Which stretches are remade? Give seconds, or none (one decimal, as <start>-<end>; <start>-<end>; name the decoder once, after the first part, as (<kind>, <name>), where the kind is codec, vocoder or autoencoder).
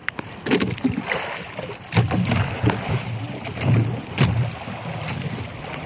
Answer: none